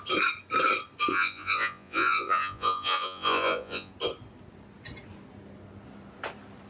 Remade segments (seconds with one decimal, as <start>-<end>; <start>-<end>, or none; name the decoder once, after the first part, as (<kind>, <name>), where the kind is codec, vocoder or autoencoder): 1.1-3.9 (vocoder, Vocos)